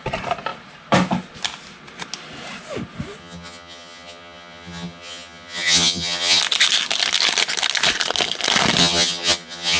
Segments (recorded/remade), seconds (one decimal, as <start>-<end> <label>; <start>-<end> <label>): 0.0-3.2 recorded; 3.2-6.4 remade; 6.4-8.8 recorded; 8.8-9.8 remade

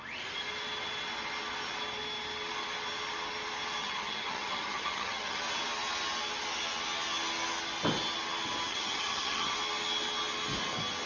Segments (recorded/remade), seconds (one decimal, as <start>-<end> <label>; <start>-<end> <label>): 0.0-3.8 recorded; 3.8-5.4 remade; 5.4-8.7 recorded; 8.7-9.5 remade; 9.5-11.1 recorded